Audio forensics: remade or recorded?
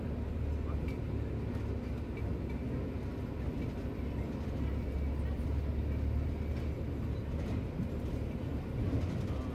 recorded